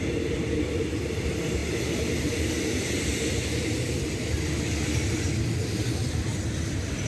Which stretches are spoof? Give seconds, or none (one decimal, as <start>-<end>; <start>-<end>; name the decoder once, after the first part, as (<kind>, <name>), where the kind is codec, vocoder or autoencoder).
none